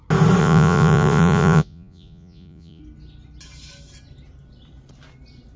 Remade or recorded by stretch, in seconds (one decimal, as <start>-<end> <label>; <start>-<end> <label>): 0.0-0.4 recorded; 0.4-2.8 remade; 2.8-5.6 recorded